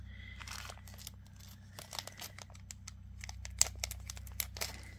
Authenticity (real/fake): real